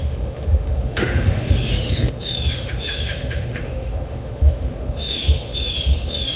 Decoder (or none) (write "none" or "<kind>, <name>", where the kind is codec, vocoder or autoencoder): autoencoder, DAC-VAE